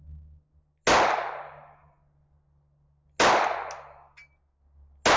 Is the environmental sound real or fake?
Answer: real